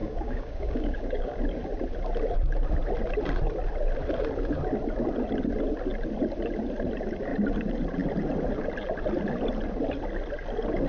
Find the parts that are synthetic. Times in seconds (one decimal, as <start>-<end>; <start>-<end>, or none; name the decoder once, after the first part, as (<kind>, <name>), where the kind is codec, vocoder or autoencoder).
0.0-1.4 (codec, DAC)

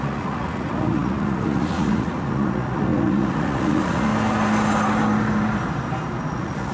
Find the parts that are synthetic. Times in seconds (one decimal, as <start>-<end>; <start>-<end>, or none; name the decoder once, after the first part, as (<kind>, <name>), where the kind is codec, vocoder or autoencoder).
0.0-4.1 (vocoder, Vocos); 6.3-6.7

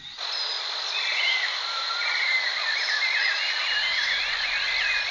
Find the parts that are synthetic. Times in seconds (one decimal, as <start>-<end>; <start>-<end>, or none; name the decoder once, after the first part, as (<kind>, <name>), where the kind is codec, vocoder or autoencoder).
1.1-4.2 (vocoder, BigVGAN v2)

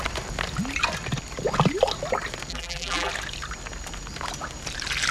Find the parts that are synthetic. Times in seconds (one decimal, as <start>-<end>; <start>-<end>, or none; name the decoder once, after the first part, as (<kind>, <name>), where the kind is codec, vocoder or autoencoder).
2.5-3.1 (vocoder, BigVGAN v2)

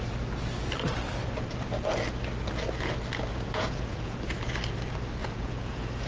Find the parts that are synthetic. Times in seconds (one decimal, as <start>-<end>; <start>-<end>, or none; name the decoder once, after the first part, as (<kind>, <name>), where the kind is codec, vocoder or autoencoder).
3.3-4.2 (vocoder, Vocos); 5.2-6.1

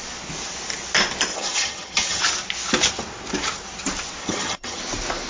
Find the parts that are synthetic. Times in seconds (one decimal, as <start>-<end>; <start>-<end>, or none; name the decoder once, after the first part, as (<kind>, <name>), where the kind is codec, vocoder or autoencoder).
1.3-2.2 (vocoder, HiFi-GAN); 4.2-4.8

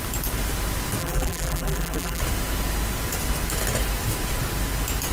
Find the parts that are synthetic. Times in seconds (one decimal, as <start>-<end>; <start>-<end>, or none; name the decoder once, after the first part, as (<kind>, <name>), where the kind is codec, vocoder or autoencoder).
1.0-2.2 (vocoder, BigVGAN v2)